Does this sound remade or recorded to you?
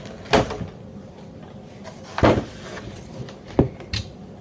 recorded